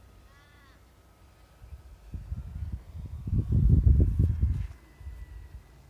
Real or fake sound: real